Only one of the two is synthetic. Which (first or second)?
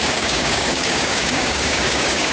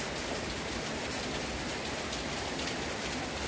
first